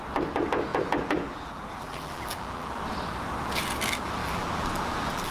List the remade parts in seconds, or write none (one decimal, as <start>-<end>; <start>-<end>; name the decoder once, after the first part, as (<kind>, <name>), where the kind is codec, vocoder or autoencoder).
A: 0.7-2.8 (vocoder, BigVGAN v2); 4.2-5.3